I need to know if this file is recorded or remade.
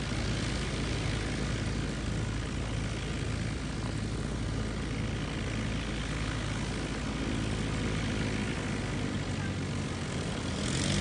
recorded